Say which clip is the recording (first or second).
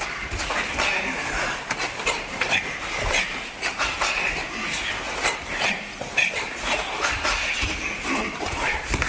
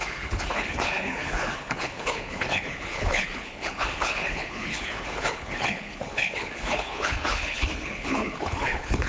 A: first